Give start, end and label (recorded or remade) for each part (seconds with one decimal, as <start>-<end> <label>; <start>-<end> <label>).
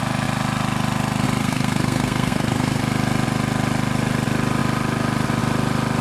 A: 0.0-1.4 recorded; 1.4-2.8 remade; 2.8-6.0 recorded